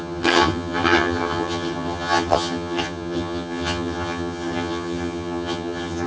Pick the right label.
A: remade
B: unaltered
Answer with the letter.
A